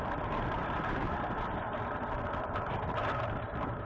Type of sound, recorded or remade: remade